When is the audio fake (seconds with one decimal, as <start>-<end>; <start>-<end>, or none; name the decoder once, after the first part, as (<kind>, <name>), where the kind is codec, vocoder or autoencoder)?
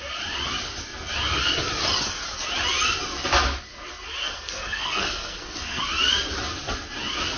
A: 4.2-5.8 (codec, SNAC)